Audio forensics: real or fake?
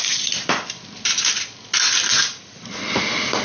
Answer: real